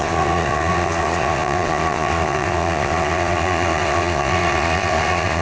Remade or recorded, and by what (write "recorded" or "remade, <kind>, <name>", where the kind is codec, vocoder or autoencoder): remade, vocoder, Vocos